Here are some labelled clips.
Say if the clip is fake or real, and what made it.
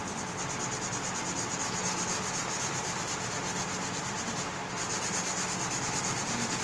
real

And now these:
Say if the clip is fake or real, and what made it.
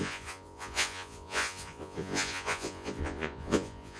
fake, vocoder, Vocos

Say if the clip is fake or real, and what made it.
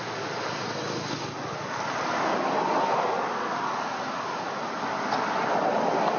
real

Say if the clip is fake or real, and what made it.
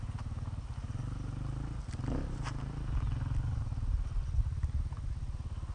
real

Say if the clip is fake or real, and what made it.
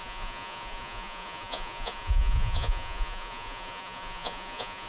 fake, vocoder, Vocos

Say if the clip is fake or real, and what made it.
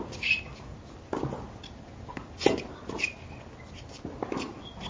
real